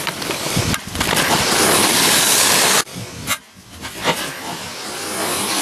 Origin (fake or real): fake